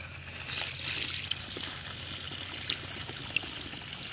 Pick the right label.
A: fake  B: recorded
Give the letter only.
B